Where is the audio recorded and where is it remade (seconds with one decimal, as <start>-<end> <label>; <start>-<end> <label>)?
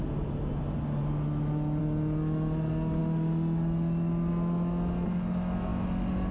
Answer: 0.0-6.3 recorded